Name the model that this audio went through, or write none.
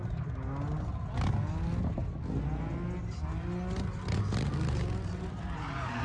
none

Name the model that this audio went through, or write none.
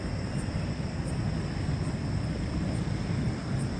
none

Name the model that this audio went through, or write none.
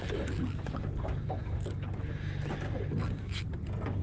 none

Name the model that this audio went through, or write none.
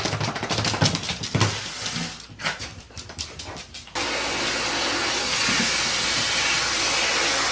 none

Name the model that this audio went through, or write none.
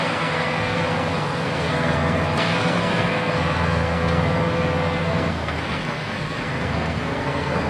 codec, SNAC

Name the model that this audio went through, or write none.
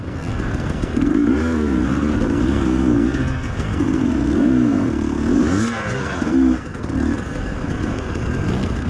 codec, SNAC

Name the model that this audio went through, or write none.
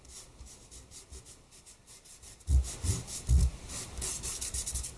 none